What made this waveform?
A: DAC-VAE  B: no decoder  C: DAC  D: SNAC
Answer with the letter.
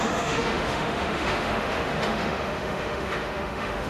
A